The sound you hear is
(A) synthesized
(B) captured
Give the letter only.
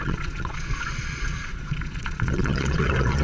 A